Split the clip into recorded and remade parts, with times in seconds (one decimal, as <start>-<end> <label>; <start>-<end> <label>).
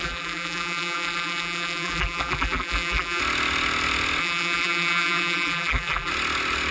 0.0-3.2 remade; 3.2-4.2 recorded; 4.2-6.1 remade; 6.1-6.7 recorded